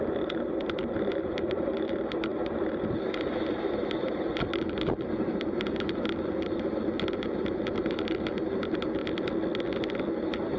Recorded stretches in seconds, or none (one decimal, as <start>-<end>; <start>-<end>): 9.0-10.1